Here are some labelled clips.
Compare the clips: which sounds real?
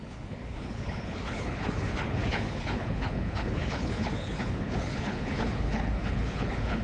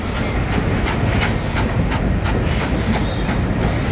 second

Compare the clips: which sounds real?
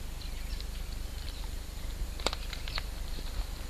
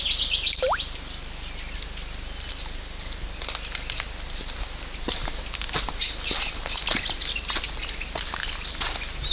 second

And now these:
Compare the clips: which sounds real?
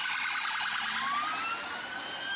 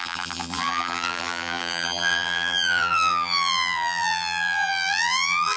first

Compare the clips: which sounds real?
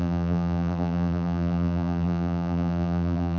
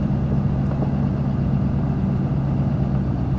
second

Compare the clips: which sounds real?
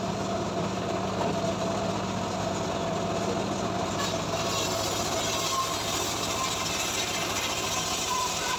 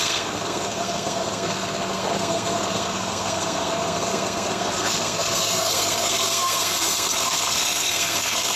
first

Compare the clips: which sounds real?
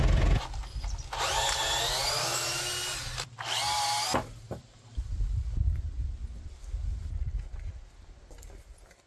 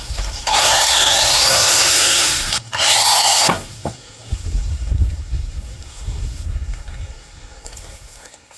first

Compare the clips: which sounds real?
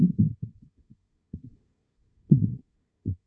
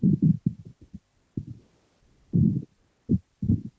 second